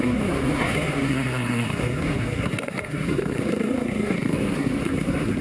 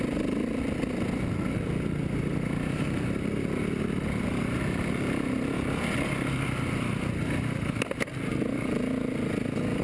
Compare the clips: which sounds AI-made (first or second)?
first